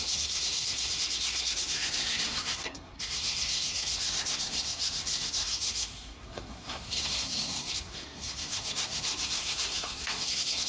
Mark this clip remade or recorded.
remade